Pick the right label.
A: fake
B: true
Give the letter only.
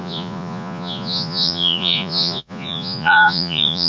A